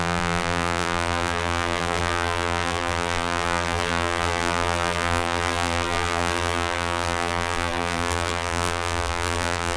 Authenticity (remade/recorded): remade